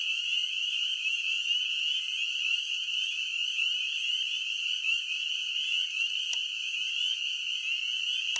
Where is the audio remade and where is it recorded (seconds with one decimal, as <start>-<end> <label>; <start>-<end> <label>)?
0.0-0.4 recorded; 0.4-1.4 remade; 1.4-3.4 recorded; 3.4-5.5 remade; 5.5-8.4 recorded